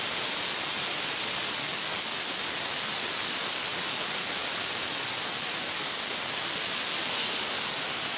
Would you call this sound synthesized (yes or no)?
no